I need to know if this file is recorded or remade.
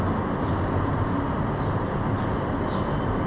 recorded